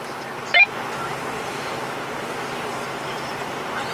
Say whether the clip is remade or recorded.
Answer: recorded